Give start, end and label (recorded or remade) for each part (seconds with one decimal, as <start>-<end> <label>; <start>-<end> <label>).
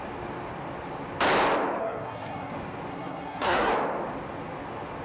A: 0.0-1.8 recorded; 1.8-2.5 remade; 2.5-2.9 recorded; 2.9-3.7 remade; 3.7-5.0 recorded